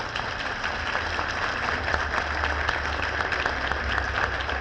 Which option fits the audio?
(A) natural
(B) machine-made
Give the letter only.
A